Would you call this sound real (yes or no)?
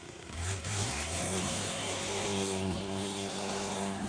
no